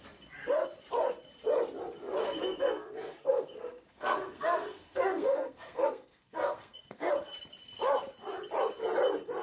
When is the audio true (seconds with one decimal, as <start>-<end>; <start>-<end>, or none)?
0.0-2.2; 7.1-9.4